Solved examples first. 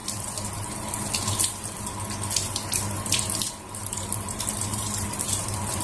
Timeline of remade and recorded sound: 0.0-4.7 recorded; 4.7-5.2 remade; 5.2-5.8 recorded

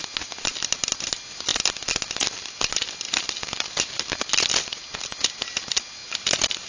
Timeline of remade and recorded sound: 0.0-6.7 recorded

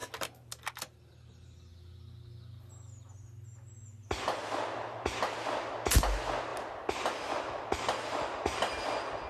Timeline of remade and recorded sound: 0.0-9.3 recorded

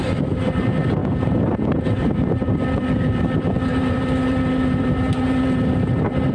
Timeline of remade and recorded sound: 0.0-6.3 remade